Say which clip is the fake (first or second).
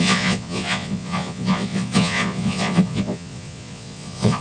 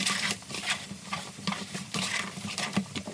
first